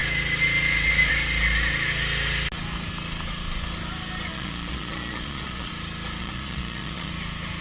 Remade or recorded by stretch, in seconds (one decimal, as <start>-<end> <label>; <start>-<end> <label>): 0.0-4.3 recorded; 4.3-5.7 remade; 5.7-6.2 recorded; 6.2-7.1 remade; 7.1-7.6 recorded